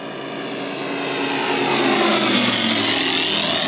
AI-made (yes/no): no